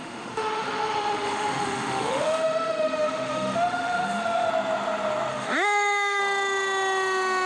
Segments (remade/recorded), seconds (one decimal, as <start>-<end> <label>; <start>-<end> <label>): 0.0-4.5 remade; 4.5-5.3 recorded; 5.3-6.2 remade; 6.2-7.5 recorded

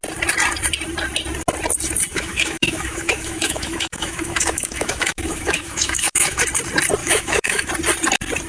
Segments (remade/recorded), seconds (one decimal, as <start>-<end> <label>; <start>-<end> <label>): 0.0-2.1 recorded; 2.1-6.4 remade; 6.4-7.0 recorded; 7.0-7.7 remade; 7.7-8.5 recorded

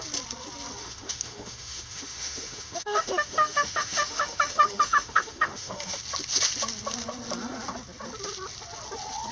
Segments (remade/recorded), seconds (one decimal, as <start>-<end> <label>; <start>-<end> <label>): 0.0-0.8 recorded; 0.8-6.0 remade; 6.0-9.3 recorded